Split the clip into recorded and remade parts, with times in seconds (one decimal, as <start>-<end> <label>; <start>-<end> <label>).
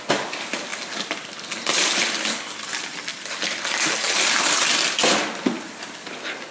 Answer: 0.0-6.5 recorded